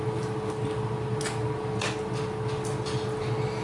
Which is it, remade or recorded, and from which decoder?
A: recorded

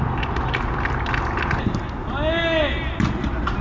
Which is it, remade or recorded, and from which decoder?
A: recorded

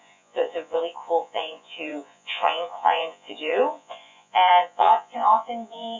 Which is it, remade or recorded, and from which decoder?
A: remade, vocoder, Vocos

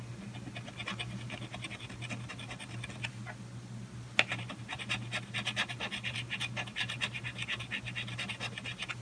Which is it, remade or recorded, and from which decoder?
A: recorded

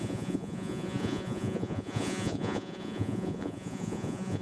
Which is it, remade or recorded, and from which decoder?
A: remade, vocoder, Vocos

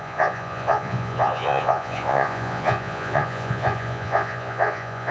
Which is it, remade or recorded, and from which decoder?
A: remade, vocoder, Vocos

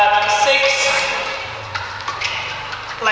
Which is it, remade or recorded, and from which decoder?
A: recorded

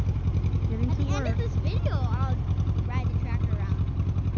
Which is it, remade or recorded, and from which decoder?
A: recorded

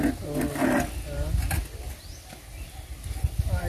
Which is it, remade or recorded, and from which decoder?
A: recorded